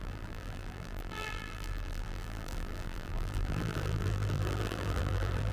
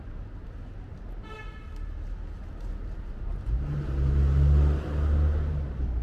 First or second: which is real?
second